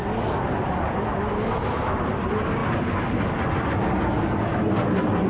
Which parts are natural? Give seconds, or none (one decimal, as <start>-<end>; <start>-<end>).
0.0-5.3